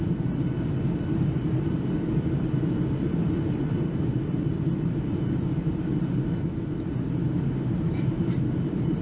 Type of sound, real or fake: fake